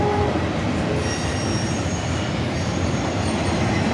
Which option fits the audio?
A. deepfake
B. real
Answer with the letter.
B